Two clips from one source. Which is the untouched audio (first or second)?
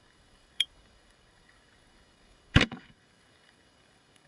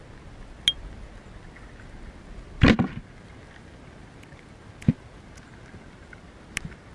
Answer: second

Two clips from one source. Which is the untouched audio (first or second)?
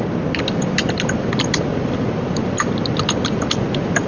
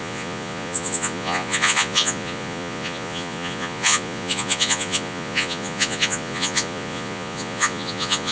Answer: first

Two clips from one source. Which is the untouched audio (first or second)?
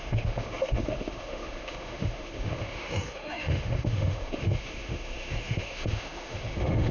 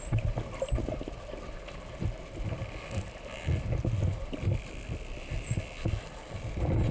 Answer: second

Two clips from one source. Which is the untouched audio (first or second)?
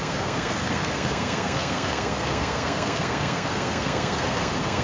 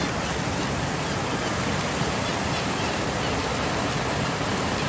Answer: second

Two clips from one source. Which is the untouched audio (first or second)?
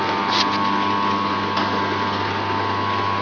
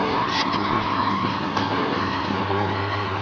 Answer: first